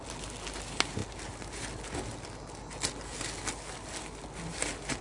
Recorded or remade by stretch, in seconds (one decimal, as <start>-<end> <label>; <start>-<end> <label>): 0.0-5.0 recorded